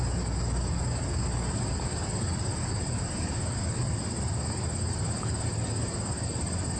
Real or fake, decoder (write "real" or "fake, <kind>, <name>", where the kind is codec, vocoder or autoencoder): real